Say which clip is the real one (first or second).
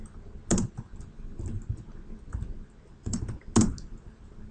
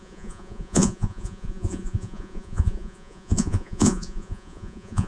first